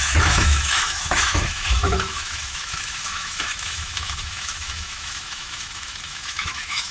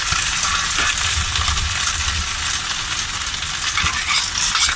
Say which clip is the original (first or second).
second